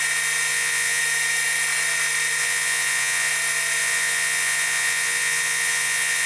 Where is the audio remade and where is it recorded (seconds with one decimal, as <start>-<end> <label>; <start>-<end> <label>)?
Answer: 0.0-0.5 recorded; 0.5-1.0 remade; 1.0-2.4 recorded; 2.4-3.3 remade; 3.3-3.8 recorded; 3.8-6.3 remade